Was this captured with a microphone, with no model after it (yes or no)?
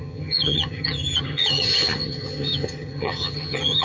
no